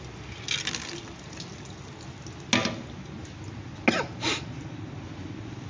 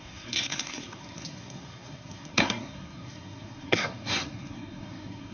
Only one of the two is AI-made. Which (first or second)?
second